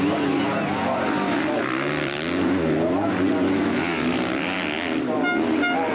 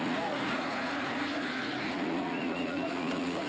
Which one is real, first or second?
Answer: first